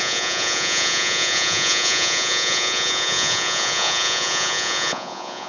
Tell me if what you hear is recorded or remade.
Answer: remade